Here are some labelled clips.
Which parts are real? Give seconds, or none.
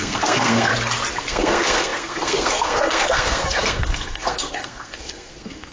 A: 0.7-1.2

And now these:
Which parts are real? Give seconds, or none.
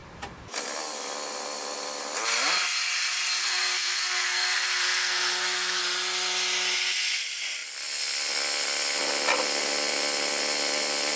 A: 0.0-3.4; 5.8-11.2